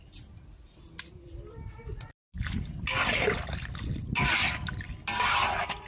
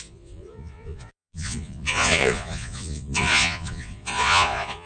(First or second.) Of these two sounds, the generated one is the second